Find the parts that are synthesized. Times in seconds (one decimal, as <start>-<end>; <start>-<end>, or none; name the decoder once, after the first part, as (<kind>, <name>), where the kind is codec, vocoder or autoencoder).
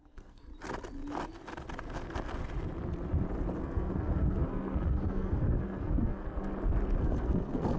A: 0.0-0.5 (codec, SNAC); 3.6-6.5; 7.0-7.8